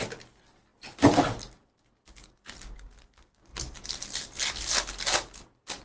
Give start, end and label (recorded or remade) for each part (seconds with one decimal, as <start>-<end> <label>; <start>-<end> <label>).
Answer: 0.0-5.8 recorded